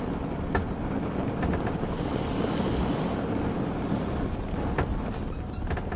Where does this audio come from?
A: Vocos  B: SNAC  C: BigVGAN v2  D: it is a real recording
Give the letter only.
D